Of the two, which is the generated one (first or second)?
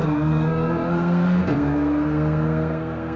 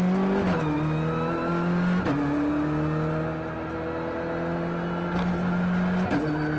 first